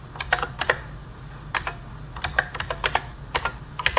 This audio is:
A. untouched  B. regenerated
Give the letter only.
A